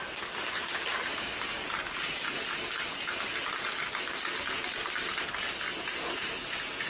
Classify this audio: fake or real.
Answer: real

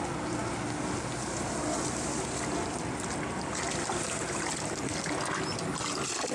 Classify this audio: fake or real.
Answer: real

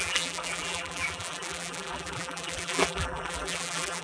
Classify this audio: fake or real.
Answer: fake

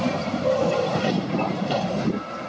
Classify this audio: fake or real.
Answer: fake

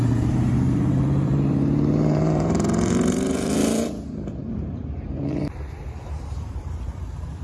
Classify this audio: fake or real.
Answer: fake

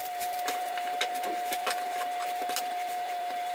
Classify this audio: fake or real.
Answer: fake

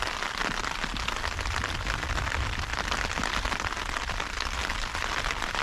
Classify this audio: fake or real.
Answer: real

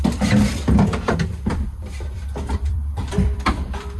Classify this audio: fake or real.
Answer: fake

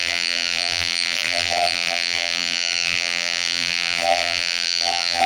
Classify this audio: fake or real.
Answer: fake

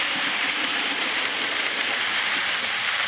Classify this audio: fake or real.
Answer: fake